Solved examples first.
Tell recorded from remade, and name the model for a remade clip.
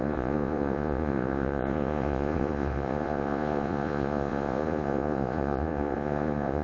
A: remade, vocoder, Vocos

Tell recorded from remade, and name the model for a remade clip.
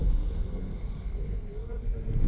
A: remade, codec, SNAC